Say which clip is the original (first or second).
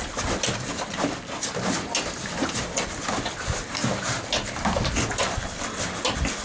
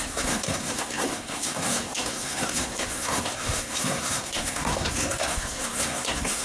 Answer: first